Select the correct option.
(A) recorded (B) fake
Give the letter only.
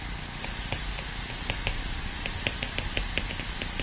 A